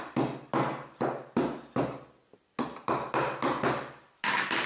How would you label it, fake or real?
real